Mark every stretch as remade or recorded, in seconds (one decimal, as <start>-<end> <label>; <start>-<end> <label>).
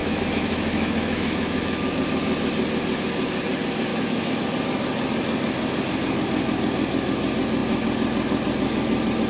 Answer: 0.0-2.0 remade; 2.0-3.9 recorded; 3.9-4.4 remade; 4.4-9.3 recorded